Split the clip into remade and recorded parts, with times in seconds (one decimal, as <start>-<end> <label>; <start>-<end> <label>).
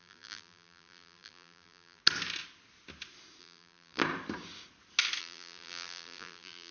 0.0-2.0 remade; 2.0-3.4 recorded; 3.4-4.0 remade; 4.0-5.2 recorded; 5.2-6.7 remade